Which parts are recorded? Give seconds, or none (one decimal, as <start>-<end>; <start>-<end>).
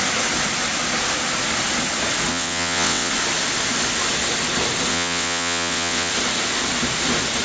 0.0-2.3; 3.1-4.9; 6.1-7.4